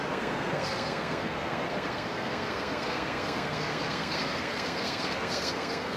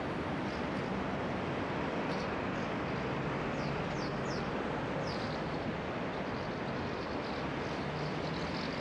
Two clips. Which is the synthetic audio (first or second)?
first